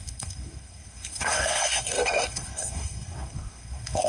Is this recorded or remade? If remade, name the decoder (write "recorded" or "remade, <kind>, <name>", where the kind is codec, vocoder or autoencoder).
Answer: remade, codec, SNAC